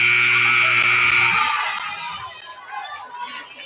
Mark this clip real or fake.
real